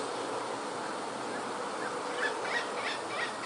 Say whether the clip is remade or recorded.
recorded